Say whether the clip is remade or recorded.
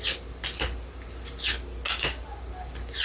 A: recorded